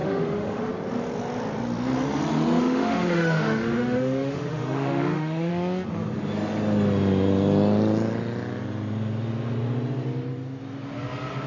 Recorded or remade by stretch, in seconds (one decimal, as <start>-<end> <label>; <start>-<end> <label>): 0.0-0.7 remade; 0.7-2.6 recorded; 2.6-5.5 remade; 5.5-11.5 recorded